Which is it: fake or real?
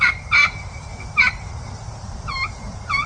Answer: fake